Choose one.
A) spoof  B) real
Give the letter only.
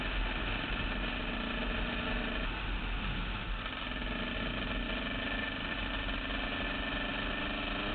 B